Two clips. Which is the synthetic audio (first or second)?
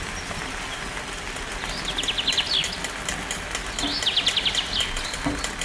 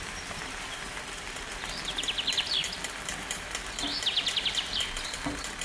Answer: second